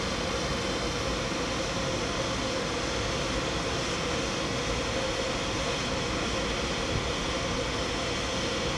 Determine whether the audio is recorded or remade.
recorded